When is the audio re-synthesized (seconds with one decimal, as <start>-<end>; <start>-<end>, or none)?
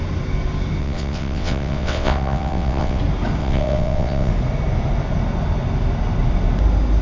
0.8-3.0; 3.4-4.3